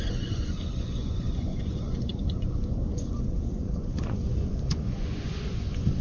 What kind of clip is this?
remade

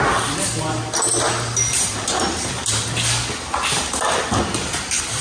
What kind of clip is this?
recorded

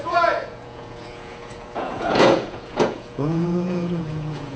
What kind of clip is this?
remade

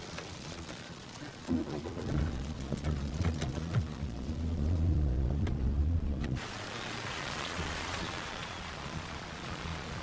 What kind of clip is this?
remade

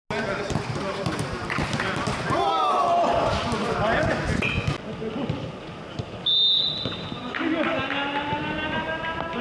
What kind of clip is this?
recorded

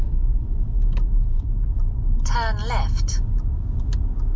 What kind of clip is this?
recorded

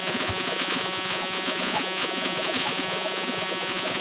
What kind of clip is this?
remade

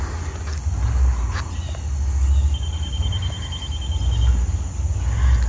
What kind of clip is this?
recorded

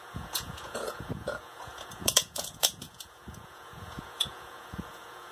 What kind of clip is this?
remade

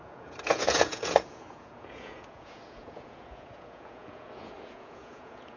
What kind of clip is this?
remade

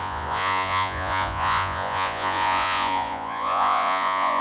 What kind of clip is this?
remade